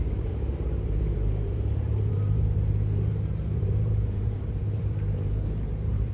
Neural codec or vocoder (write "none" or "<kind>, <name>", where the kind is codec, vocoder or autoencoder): vocoder, BigVGAN v2